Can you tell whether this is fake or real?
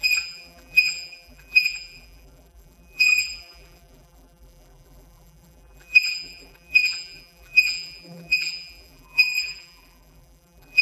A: fake